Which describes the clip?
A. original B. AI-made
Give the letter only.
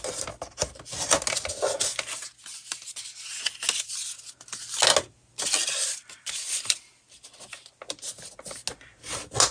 A